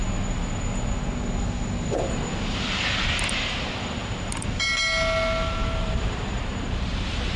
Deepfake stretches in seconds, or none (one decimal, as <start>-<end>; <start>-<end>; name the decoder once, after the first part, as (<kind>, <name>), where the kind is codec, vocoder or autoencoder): 5.6-7.4 (vocoder, BigVGAN v2)

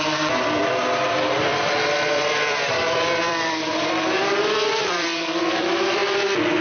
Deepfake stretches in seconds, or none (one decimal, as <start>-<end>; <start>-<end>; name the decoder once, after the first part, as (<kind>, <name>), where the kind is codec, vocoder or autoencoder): 0.0-6.0 (vocoder, BigVGAN v2)

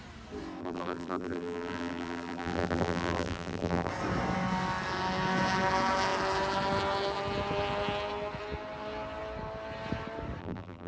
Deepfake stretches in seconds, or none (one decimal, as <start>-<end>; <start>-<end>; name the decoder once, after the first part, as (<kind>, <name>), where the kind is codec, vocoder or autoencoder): 0.6-3.9 (vocoder, BigVGAN v2); 10.4-10.9